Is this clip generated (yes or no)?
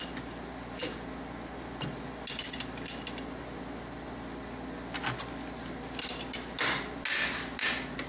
no